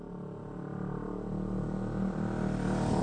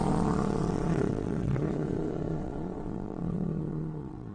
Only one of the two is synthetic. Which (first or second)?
second